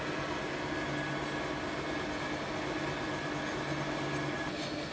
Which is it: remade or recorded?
recorded